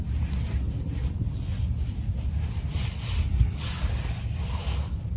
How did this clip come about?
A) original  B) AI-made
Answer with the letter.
A